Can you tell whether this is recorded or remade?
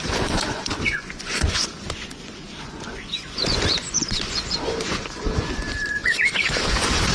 remade